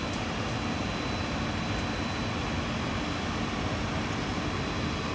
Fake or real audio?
real